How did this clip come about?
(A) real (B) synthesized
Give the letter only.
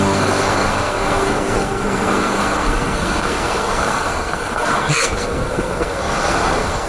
B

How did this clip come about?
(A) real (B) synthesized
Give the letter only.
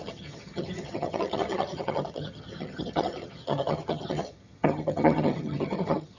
B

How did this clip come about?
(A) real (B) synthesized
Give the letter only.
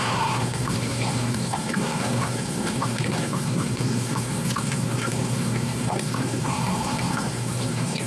B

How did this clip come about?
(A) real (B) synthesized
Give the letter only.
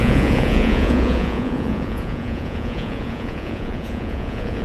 B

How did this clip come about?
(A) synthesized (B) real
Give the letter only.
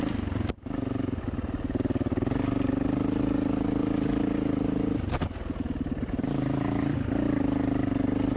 B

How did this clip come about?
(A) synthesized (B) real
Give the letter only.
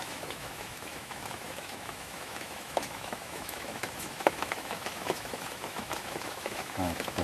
A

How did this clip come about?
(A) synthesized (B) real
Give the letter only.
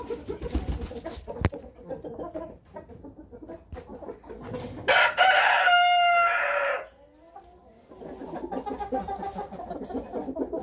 B